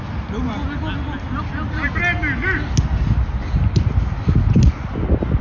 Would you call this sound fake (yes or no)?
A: no